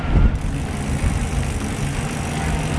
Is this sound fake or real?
real